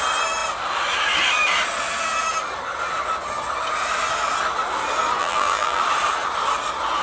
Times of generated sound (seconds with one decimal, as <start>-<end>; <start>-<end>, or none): 5.2-5.8